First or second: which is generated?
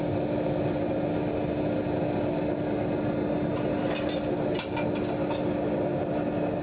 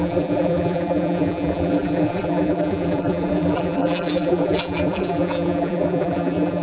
second